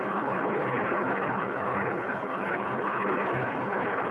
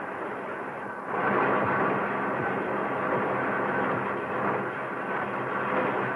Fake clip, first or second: first